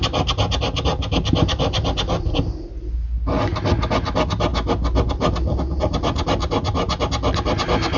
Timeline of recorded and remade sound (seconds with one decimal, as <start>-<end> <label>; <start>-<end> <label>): 0.0-8.0 recorded